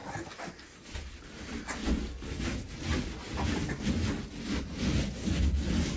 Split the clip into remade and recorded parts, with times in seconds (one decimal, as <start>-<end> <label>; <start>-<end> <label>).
0.0-6.0 recorded